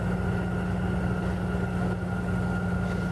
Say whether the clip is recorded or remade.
recorded